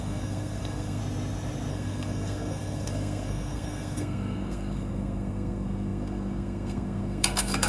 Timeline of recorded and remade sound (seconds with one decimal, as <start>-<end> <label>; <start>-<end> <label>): 0.0-1.0 remade; 1.0-1.7 recorded; 1.7-7.7 remade